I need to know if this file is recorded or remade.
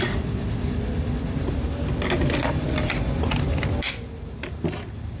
recorded